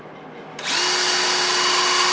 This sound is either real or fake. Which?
real